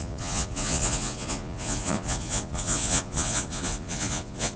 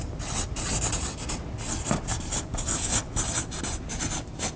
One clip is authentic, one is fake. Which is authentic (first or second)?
second